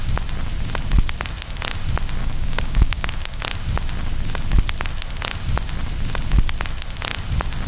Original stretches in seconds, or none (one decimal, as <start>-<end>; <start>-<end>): 0.0-2.2; 3.4-7.7